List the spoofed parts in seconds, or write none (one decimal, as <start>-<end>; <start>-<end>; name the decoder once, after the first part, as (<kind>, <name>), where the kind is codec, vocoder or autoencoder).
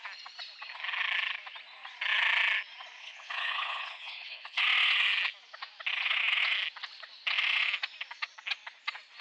3.0-4.6 (codec, HILCodec)